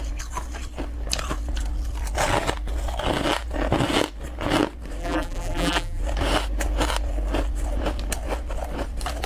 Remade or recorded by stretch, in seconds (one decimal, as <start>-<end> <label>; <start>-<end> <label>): 0.0-5.0 recorded; 5.0-6.0 remade; 6.0-9.3 recorded